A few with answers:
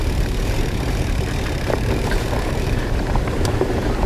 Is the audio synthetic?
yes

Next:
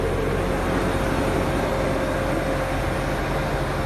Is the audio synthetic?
no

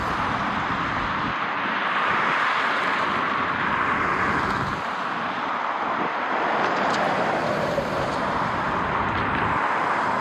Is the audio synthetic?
yes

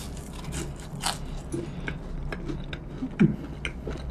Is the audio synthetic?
no